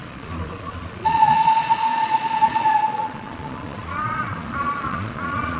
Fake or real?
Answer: fake